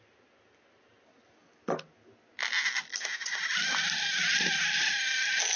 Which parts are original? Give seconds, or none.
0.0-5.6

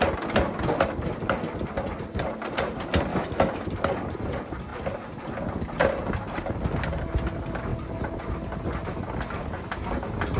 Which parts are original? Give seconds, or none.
0.0-3.1; 3.6-10.4

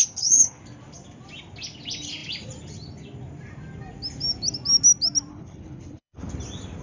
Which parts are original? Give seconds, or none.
0.6-5.3; 6.3-6.8

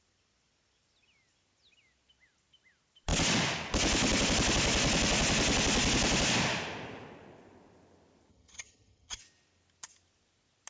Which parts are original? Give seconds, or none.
0.0-8.3; 9.2-10.7

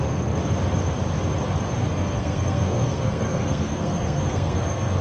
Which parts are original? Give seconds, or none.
0.4-1.7